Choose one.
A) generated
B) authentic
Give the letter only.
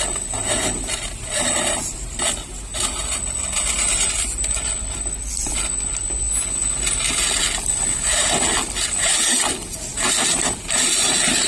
B